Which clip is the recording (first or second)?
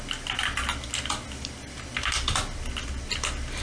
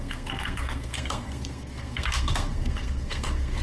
first